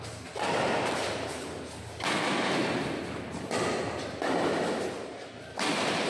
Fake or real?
real